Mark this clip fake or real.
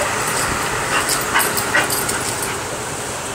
real